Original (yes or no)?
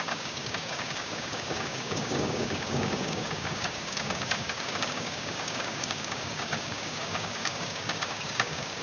no